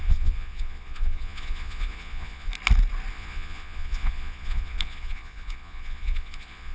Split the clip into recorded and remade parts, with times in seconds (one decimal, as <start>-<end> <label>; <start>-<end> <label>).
0.0-2.5 remade; 2.5-3.1 recorded; 3.1-6.7 remade